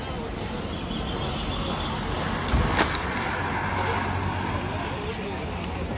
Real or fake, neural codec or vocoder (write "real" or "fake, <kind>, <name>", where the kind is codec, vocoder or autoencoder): real